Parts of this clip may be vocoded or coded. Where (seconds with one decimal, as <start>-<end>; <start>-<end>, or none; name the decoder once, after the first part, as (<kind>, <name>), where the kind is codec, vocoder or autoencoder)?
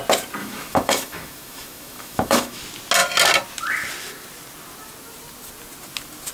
0.4-2.6 (autoencoder, DAC-VAE)